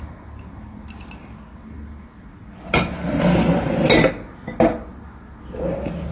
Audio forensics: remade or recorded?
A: recorded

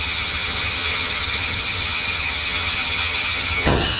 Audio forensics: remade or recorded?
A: remade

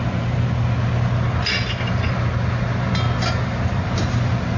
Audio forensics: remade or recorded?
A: recorded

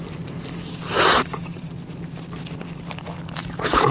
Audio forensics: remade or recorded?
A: recorded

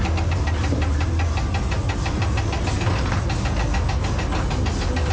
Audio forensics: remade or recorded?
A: recorded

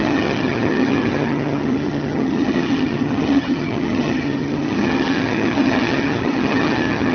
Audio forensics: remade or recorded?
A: remade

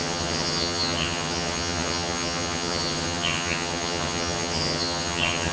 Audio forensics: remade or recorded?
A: remade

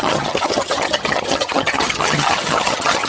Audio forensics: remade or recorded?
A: remade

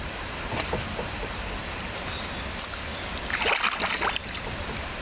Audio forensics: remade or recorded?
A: recorded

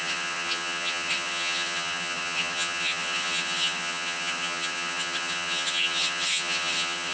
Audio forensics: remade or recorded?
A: remade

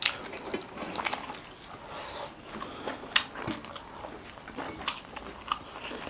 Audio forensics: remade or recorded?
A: recorded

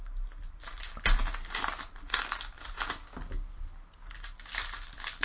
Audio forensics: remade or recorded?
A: recorded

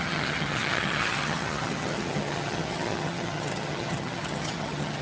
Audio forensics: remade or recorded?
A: remade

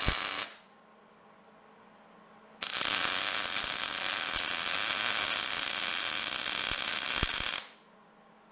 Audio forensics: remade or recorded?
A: recorded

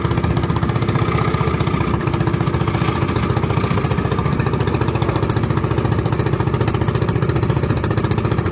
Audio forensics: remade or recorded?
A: recorded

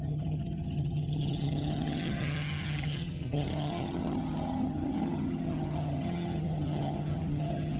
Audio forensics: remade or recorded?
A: remade